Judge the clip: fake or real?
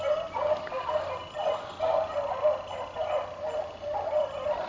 real